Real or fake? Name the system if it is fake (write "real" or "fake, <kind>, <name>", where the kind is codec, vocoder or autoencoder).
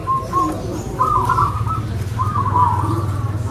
fake, vocoder, BigVGAN v2